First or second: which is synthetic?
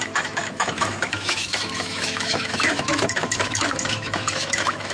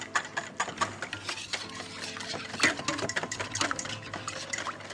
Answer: first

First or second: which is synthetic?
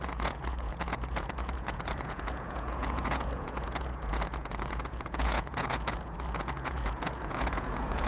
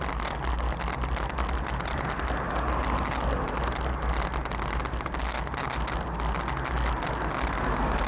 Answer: first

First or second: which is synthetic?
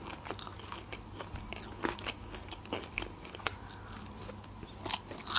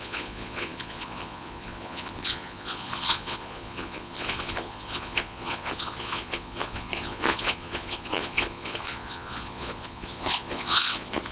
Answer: second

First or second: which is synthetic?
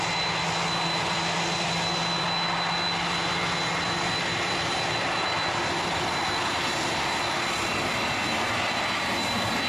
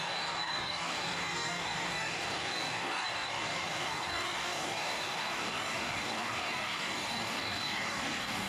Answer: second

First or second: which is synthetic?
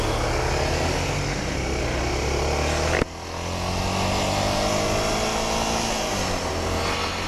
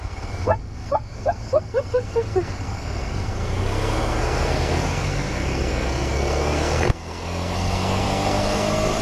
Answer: second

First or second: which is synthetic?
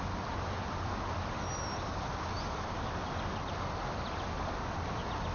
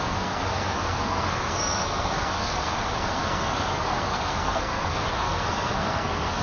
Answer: second